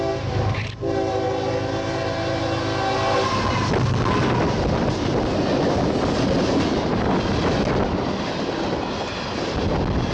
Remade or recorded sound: recorded